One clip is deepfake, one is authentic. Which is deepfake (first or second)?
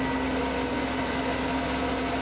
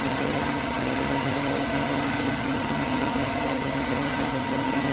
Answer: second